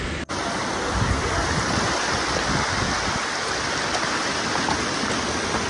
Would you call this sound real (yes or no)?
yes